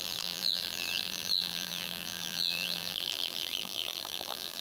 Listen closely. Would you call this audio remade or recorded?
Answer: remade